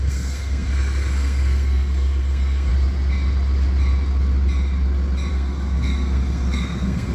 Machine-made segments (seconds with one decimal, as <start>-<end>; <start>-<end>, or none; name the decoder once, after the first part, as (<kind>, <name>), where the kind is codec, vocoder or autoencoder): 0.0-2.7 (codec, SNAC); 5.3-7.1